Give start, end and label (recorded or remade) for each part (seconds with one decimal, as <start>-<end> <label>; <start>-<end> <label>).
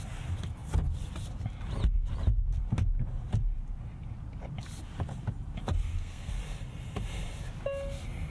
0.0-5.9 recorded; 5.9-6.4 remade; 6.4-8.3 recorded